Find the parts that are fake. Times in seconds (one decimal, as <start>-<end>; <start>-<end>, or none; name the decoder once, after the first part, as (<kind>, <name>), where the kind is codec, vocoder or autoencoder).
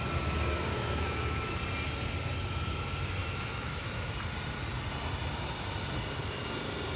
0.7-1.6 (autoencoder, DAC-VAE); 3.2-4.1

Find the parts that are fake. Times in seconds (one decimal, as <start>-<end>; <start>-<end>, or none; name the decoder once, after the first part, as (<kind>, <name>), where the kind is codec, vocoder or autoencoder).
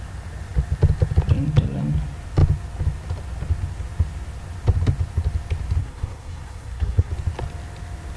5.8-7.1 (codec, SNAC)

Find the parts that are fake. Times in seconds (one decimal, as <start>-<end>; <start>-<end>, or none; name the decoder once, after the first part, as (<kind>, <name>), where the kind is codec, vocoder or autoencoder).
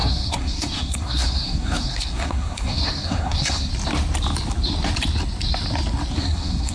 0.0-3.7 (codec, SNAC); 6.1-6.7